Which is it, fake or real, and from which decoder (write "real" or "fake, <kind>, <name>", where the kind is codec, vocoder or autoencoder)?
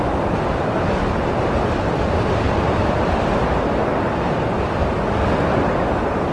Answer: real